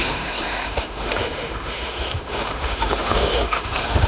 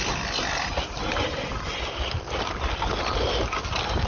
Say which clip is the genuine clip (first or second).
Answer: second